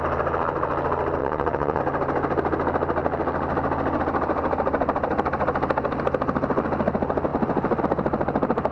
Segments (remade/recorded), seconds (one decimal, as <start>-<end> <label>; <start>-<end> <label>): 0.0-1.2 recorded; 1.2-1.8 remade; 1.8-8.7 recorded